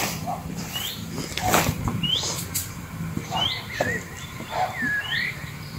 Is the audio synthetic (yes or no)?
yes